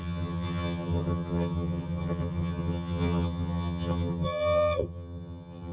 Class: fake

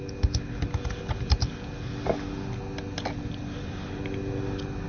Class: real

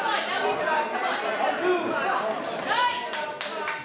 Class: real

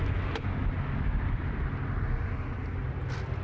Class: real